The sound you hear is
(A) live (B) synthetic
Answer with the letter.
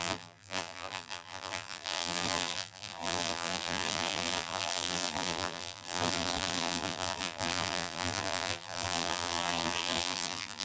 B